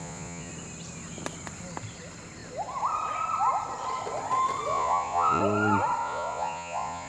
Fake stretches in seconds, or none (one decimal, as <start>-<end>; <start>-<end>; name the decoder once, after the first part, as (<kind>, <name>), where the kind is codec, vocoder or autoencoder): 0.0-0.5 (vocoder, Vocos); 4.7-5.4; 6.0-7.1